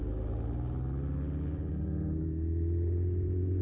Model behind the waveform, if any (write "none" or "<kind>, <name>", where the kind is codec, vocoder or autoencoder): none